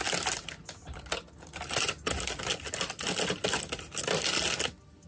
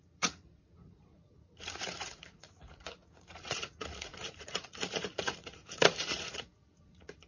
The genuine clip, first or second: first